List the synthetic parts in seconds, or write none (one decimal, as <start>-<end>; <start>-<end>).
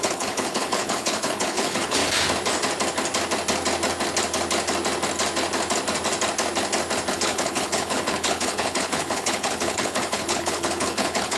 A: 0.0-2.0; 7.1-11.4